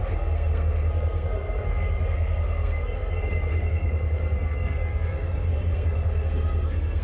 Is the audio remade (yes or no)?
yes